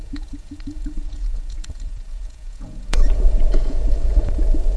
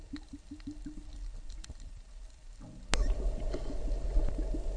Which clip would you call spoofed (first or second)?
first